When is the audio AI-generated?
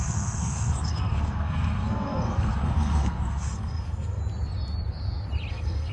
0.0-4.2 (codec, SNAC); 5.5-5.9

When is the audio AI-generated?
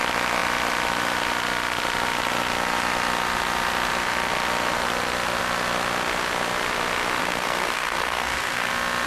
7.2-8.7 (codec, SNAC)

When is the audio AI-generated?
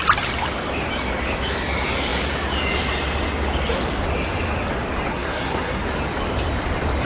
5.1-5.8 (codec, SNAC)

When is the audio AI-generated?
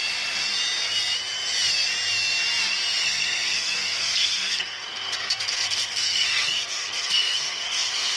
3.0-8.2 (codec, SNAC)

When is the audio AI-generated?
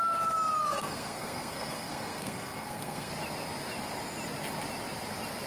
0.7-3.1 (codec, SNAC)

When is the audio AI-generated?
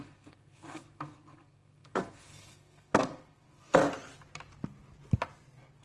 0.0-3.8 (codec, SNAC)